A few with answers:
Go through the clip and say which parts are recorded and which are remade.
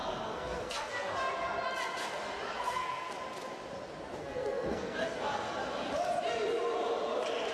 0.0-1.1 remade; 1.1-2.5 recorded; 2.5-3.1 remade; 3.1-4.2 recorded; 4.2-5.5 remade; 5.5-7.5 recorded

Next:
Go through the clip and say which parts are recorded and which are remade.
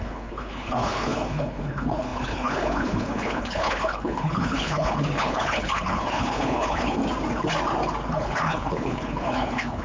0.0-7.0 remade; 7.0-8.1 recorded; 8.1-9.8 remade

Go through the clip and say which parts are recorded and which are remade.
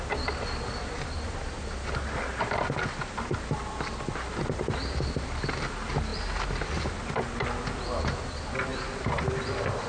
0.0-9.9 recorded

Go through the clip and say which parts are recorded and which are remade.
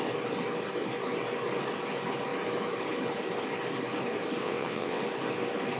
0.0-4.4 recorded; 4.4-5.0 remade; 5.0-5.8 recorded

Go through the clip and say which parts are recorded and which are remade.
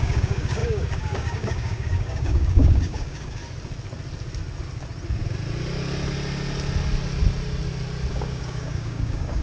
0.0-3.4 remade; 3.4-8.1 recorded; 8.1-9.4 remade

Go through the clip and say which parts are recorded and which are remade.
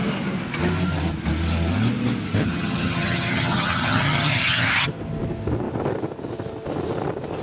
0.0-2.4 recorded; 2.4-4.9 remade; 4.9-7.4 recorded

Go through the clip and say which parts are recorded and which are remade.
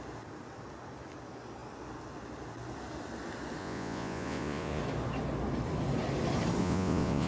0.0-3.6 recorded; 3.6-4.8 remade; 4.8-6.6 recorded; 6.6-7.3 remade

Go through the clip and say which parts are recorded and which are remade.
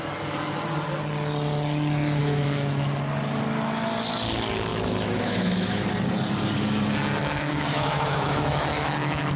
0.0-2.2 recorded; 2.2-2.9 remade; 2.9-4.7 recorded; 4.7-5.9 remade; 5.9-7.2 recorded; 7.2-9.4 remade